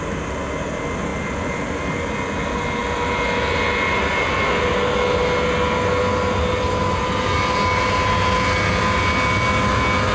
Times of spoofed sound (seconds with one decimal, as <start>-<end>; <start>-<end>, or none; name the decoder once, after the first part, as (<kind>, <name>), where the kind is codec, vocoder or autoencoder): none